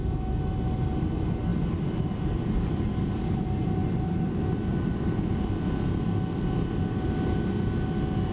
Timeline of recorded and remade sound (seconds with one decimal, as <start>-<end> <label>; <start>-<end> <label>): 0.0-1.5 recorded; 1.5-2.6 remade; 2.6-3.8 recorded; 3.8-4.4 remade; 4.4-8.3 recorded